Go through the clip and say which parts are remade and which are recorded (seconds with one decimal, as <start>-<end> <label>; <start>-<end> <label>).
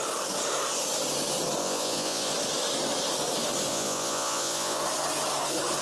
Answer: 0.0-1.6 recorded; 1.6-2.3 remade; 2.3-3.7 recorded; 3.7-4.8 remade; 4.8-5.8 recorded